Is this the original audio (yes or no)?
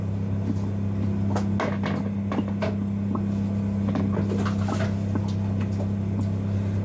yes